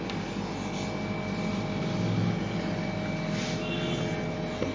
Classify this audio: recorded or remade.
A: recorded